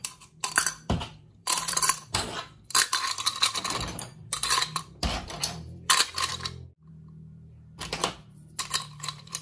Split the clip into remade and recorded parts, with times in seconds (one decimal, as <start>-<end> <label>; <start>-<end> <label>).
0.0-6.3 remade; 6.3-6.9 recorded; 6.9-9.4 remade

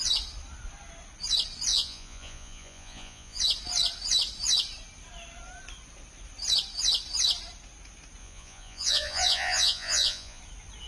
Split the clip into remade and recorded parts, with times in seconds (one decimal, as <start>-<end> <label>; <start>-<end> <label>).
0.0-1.7 recorded; 1.7-3.4 remade; 3.4-8.2 recorded; 8.2-10.4 remade; 10.4-10.9 recorded